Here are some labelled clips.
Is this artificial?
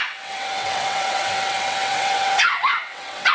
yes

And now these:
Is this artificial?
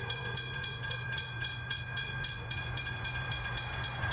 yes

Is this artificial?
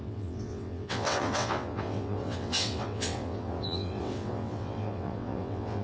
yes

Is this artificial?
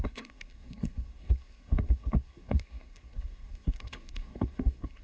yes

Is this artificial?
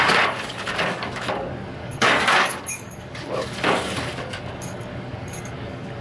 yes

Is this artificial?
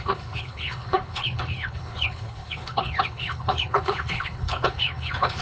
yes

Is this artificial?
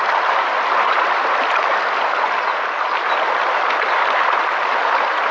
no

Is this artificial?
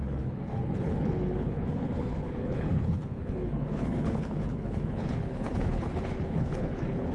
yes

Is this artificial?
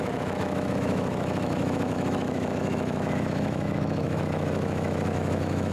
yes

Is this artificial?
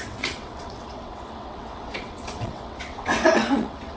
yes